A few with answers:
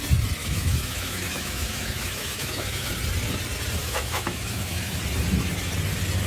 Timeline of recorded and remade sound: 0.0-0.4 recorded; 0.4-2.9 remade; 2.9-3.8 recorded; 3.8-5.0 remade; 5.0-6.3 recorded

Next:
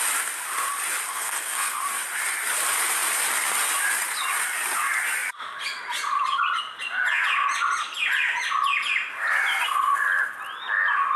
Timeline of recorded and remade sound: 0.0-1.1 recorded; 1.1-1.8 remade; 1.8-11.2 recorded

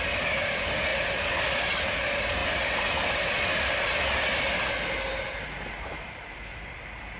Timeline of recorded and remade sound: 0.0-7.2 recorded

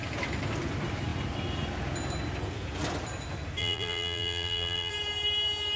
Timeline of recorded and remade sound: 0.0-3.6 recorded; 3.6-4.9 remade; 4.9-5.8 recorded

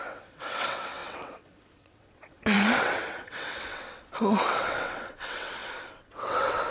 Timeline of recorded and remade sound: 0.0-6.7 remade

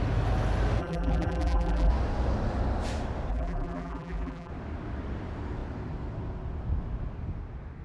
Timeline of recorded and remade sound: 0.0-0.8 recorded; 0.8-1.9 remade; 1.9-3.3 recorded; 3.3-4.5 remade; 4.5-7.8 recorded

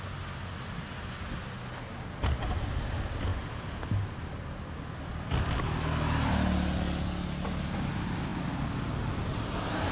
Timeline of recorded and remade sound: 0.0-9.9 recorded